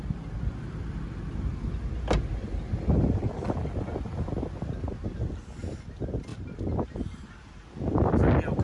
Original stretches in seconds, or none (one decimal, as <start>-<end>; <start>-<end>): 0.0-8.6